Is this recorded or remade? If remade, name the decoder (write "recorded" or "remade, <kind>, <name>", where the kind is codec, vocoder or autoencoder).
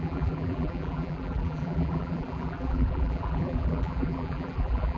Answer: remade, vocoder, BigVGAN v2